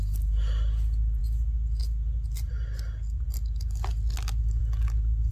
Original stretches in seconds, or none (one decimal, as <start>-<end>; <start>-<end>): 0.0-5.3